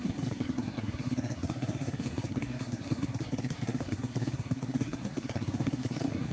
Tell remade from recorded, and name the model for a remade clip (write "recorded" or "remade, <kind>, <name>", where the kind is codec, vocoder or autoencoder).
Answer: remade, codec, SNAC